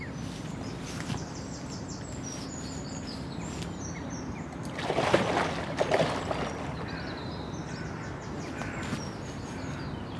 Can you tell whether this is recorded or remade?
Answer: recorded